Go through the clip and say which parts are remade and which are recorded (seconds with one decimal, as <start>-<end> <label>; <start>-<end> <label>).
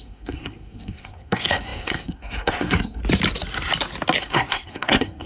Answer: 0.0-3.0 remade; 3.0-4.2 recorded; 4.2-5.3 remade